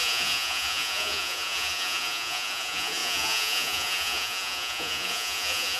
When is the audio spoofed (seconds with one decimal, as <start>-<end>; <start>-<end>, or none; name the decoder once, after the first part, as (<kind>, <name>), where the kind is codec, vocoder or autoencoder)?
0.0-5.8 (vocoder, Vocos)